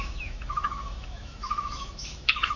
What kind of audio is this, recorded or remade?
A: remade